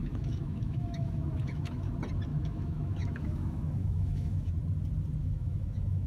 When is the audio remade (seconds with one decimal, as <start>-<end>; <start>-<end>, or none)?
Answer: 0.0-1.9; 2.3-4.5; 5.2-6.1